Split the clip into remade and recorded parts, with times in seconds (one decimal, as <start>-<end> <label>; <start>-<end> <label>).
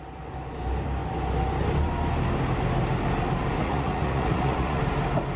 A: 0.0-3.6 recorded; 3.6-4.8 remade; 4.8-5.4 recorded